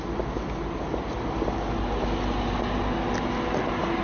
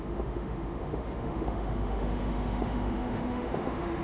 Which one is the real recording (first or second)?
first